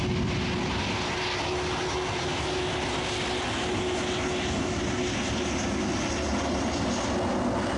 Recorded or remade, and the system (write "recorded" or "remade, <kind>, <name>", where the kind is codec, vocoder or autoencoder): recorded